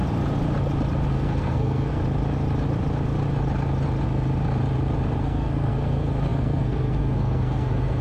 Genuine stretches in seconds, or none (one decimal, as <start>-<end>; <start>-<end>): 0.0-1.1; 2.0-5.2